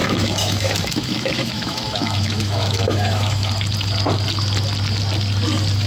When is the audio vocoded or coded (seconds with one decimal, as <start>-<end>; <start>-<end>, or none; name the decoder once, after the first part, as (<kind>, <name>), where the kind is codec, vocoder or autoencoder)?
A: 0.0-3.5 (autoencoder, DAC-VAE)